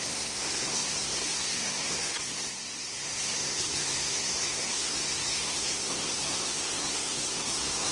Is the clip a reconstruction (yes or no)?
yes